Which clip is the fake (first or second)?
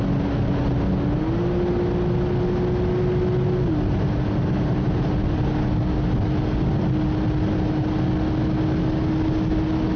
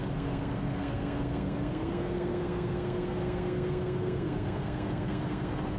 second